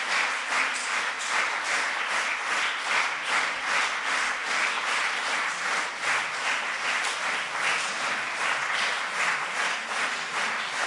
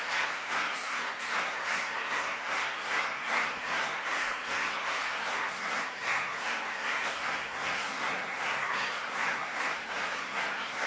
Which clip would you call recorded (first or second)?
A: first